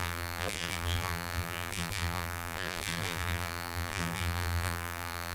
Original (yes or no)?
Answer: no